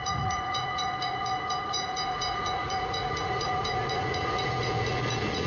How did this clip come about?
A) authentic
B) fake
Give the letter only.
B